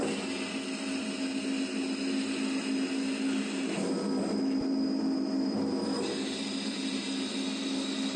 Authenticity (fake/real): real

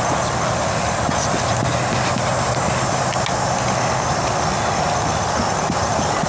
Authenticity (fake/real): real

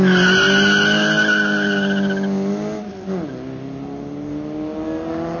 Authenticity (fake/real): real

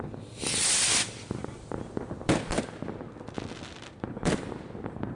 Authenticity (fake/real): fake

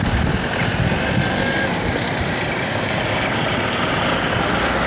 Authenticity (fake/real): real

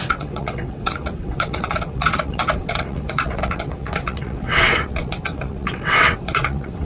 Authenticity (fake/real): fake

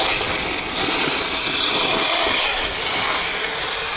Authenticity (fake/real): real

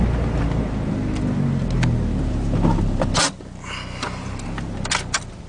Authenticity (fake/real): real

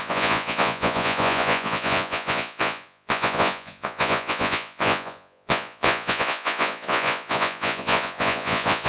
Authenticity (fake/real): fake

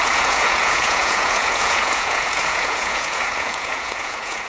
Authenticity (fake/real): fake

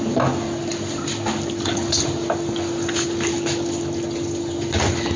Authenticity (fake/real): real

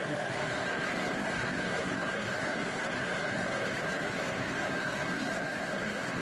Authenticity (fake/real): fake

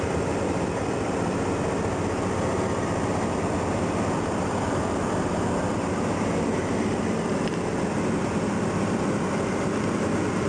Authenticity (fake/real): fake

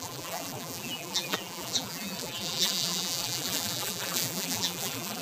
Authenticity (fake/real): fake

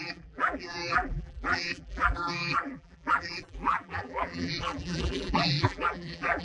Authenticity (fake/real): fake